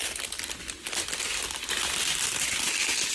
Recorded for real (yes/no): yes